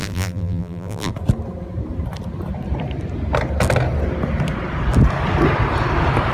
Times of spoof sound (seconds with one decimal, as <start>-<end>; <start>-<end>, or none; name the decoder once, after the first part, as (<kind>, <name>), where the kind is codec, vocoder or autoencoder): 0.0-1.1 (vocoder, BigVGAN v2)